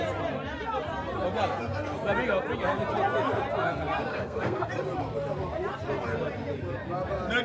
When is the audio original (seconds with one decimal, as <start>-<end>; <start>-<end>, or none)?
0.0-4.1; 4.7-7.4